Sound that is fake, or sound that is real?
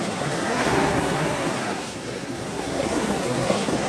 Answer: fake